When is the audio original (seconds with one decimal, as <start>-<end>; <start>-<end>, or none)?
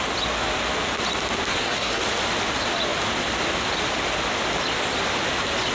0.0-1.5; 2.0-5.7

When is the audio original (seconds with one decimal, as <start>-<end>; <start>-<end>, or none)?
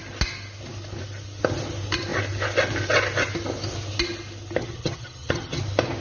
0.0-4.6; 5.6-6.0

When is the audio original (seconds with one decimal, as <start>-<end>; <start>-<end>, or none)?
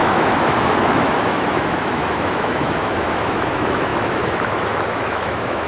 none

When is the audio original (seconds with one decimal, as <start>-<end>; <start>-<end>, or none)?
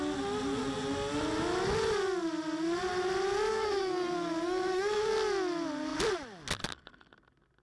0.0-3.5; 5.1-7.6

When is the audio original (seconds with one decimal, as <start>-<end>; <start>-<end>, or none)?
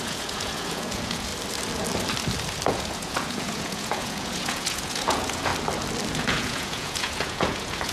1.3-2.7; 5.5-6.1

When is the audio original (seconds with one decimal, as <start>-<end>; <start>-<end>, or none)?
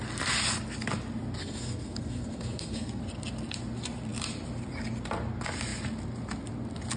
0.0-1.4; 3.0-7.0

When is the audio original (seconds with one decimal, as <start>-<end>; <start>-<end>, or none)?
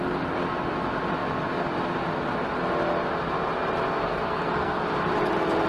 0.0-4.0; 4.8-5.7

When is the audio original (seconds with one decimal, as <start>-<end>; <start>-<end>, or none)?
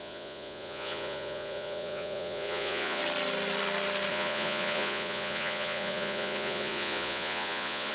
3.0-4.1